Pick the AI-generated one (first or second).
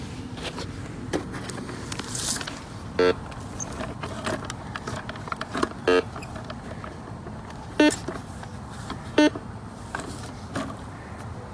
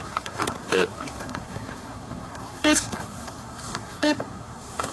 second